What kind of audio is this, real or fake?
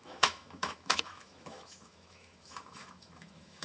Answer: fake